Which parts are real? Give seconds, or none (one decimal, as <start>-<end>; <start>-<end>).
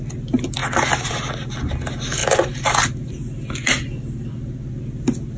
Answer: 0.0-5.4